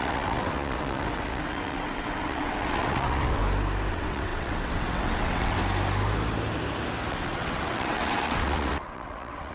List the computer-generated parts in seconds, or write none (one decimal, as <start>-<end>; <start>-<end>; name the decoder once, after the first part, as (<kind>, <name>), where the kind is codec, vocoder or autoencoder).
0.0-3.4 (vocoder, WaveNeXt); 3.9-5.6; 7.1-9.5